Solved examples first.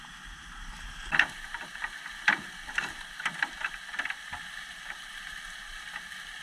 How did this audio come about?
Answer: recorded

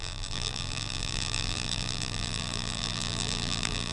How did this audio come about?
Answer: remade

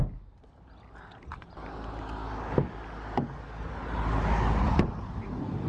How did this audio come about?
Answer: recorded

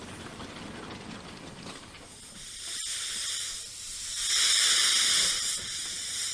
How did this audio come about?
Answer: remade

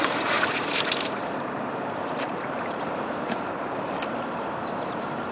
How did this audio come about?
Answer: remade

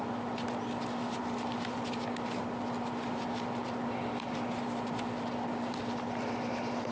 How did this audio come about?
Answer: recorded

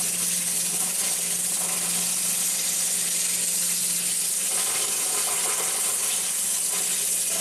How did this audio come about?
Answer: recorded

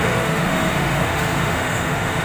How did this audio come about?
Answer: remade